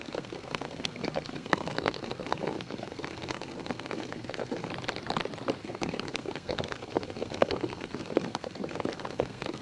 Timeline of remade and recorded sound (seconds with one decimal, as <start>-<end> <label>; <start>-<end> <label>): 0.0-4.7 remade; 4.7-5.6 recorded; 5.6-9.6 remade